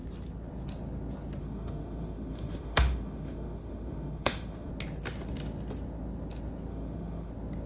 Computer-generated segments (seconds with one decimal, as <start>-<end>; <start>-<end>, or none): 1.4-4.7; 6.7-7.3